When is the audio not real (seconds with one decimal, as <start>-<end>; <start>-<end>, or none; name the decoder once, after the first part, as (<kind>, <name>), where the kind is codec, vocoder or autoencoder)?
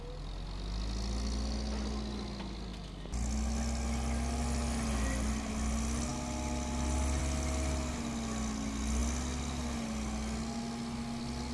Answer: none